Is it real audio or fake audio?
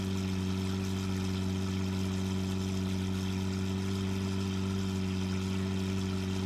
real